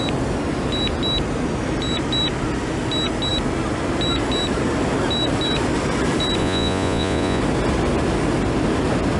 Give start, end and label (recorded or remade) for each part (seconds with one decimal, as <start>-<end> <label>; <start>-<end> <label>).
0.0-6.4 recorded; 6.4-7.4 remade; 7.4-9.2 recorded